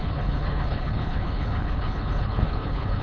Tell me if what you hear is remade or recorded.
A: remade